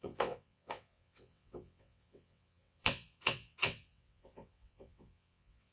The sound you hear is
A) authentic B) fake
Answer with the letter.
B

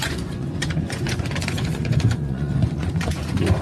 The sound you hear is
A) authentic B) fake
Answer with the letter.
B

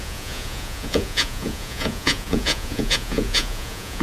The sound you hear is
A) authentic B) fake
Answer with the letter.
B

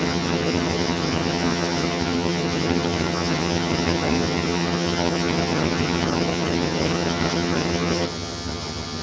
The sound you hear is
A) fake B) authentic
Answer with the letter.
A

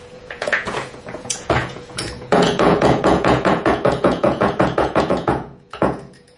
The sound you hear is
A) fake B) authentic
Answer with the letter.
A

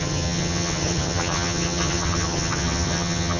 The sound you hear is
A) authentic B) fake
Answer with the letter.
B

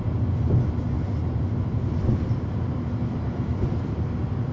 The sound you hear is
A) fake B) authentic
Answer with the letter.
B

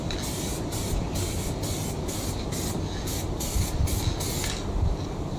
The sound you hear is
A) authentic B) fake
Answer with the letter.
A